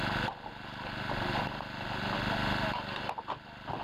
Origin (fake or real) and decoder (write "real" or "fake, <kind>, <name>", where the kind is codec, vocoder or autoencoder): real